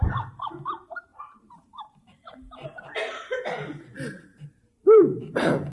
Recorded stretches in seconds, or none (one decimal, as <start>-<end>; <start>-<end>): none